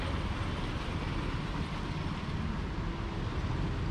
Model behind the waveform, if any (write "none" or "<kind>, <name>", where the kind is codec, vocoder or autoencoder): none